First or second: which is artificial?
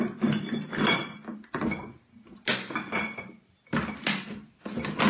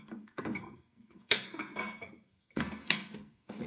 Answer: second